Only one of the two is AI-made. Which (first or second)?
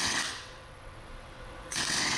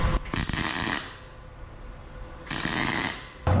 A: first